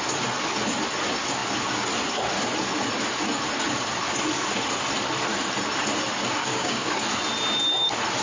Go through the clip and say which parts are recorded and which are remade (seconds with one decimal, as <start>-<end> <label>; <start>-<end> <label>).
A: 0.0-6.4 recorded; 6.4-6.9 remade; 6.9-8.2 recorded